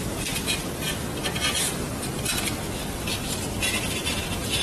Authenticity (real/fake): real